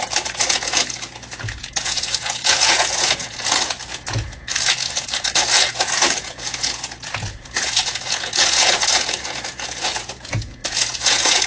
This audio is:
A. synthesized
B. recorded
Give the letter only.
A